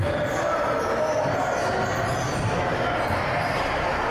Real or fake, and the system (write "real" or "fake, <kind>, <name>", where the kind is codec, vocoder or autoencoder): real